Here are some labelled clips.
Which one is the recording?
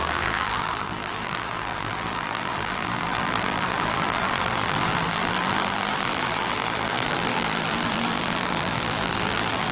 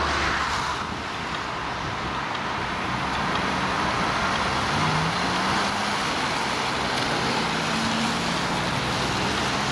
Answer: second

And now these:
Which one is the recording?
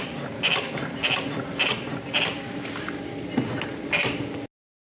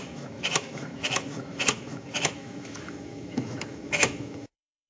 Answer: first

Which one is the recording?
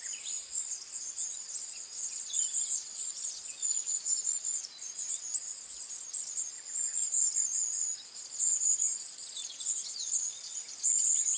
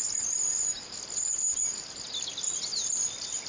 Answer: second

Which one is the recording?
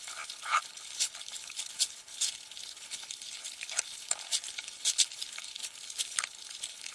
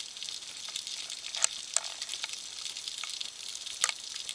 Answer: second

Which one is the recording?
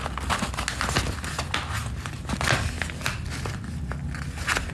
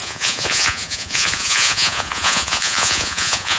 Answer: first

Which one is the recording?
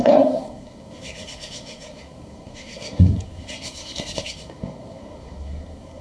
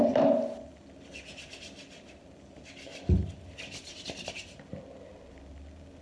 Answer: second